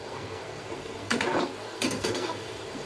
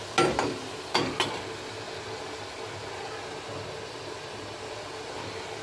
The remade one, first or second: first